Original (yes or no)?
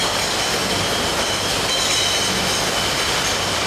yes